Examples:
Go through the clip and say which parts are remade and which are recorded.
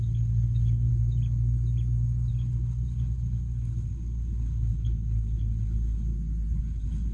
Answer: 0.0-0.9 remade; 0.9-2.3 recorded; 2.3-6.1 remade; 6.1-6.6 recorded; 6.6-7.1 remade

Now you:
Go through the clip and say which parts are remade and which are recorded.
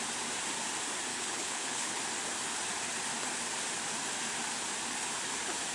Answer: 0.0-1.1 recorded; 1.1-2.0 remade; 2.0-5.7 recorded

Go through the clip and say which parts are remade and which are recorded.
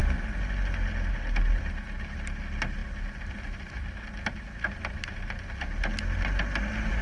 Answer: 0.0-7.0 recorded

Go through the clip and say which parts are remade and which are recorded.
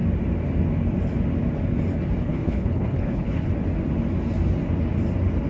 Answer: 0.0-2.2 recorded; 2.2-3.5 remade; 3.5-5.5 recorded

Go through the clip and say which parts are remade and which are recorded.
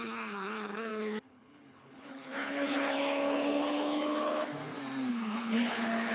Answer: 0.0-4.5 remade; 4.5-5.1 recorded; 5.1-6.1 remade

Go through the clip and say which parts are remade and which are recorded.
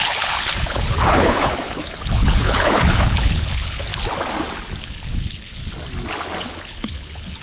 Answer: 0.0-3.9 remade; 3.9-4.8 recorded; 4.8-5.6 remade; 5.6-6.4 recorded; 6.4-7.4 remade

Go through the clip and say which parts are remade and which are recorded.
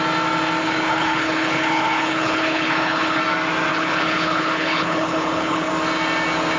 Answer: 0.0-0.6 recorded; 0.6-3.2 remade; 3.2-3.7 recorded; 3.7-5.7 remade; 5.7-6.6 recorded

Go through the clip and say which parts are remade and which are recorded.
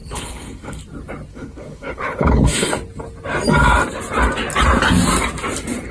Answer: 0.0-0.8 remade; 0.8-1.3 recorded; 1.3-2.7 remade; 2.7-5.9 recorded